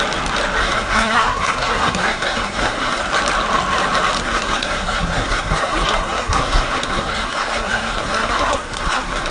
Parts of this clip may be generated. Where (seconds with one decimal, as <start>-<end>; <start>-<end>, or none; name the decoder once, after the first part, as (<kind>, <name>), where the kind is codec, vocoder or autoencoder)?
0.6-3.0 (codec, SNAC); 4.2-9.3